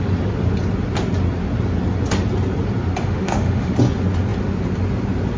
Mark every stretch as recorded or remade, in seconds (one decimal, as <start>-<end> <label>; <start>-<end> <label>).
0.0-3.0 recorded; 3.0-3.7 remade; 3.7-5.4 recorded